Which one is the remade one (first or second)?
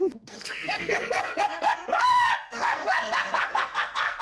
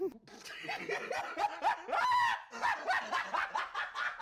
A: first